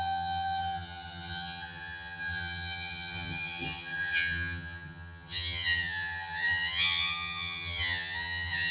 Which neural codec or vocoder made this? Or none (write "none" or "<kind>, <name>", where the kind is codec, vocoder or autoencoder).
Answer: vocoder, HiFi-GAN